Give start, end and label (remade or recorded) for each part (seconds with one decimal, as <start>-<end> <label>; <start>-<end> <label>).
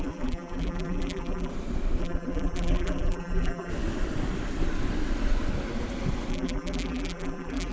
0.0-1.5 remade; 1.5-2.0 recorded; 2.0-3.7 remade; 3.7-6.3 recorded; 6.3-7.7 remade